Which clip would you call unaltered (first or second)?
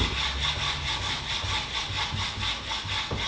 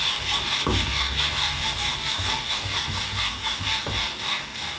first